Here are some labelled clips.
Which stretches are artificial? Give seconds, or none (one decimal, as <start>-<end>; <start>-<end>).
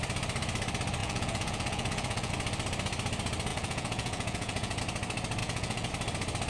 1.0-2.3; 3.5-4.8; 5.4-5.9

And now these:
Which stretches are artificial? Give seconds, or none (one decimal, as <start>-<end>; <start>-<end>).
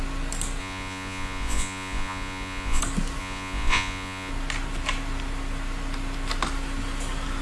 0.6-2.8; 3.2-4.3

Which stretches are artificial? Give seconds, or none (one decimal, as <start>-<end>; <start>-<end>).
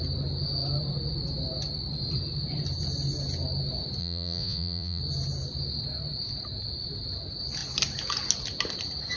4.0-5.0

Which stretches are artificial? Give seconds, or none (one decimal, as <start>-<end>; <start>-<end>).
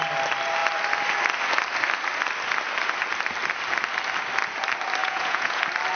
5.0-5.6